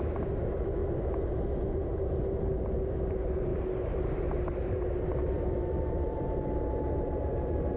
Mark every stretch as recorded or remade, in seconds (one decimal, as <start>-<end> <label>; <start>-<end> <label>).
0.0-3.5 recorded; 3.5-7.8 remade